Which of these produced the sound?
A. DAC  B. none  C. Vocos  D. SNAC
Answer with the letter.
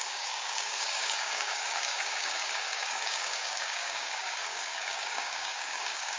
A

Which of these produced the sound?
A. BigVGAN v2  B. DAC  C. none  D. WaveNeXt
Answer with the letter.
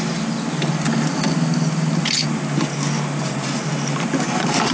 C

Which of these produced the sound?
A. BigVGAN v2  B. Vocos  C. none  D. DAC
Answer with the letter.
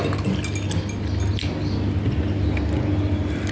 C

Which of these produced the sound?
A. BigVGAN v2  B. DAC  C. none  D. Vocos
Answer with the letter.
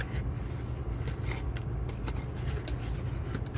C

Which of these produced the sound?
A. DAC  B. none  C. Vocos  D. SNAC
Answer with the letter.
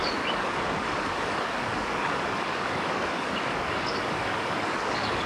A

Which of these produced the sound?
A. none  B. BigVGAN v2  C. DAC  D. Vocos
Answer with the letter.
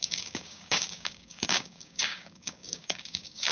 C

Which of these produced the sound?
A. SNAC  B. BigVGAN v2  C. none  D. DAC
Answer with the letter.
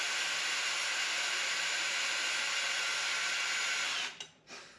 C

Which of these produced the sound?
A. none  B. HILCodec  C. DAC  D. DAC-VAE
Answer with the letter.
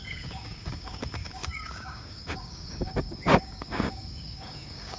C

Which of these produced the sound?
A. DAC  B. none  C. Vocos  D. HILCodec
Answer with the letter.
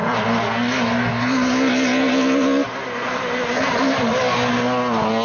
B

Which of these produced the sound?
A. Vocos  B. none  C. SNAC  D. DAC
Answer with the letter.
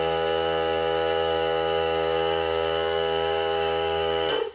D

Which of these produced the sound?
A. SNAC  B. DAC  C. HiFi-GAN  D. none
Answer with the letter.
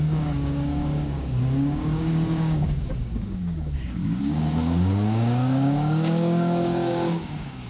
B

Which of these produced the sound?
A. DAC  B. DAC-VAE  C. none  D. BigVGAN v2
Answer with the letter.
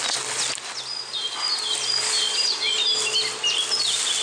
C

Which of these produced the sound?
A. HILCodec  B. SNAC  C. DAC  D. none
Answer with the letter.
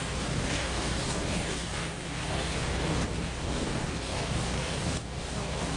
C